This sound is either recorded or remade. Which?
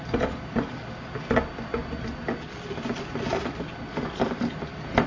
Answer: recorded